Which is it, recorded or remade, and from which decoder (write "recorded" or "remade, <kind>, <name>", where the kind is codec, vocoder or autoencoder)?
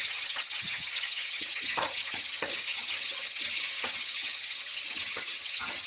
remade, vocoder, HiFi-GAN